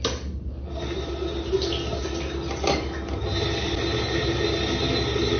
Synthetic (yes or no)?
no